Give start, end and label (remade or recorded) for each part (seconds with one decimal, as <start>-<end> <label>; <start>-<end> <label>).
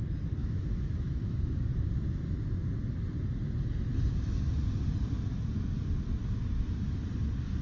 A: 0.0-0.4 recorded; 0.4-1.8 remade; 1.8-7.6 recorded